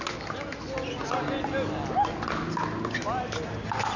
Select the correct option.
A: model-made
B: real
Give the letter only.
B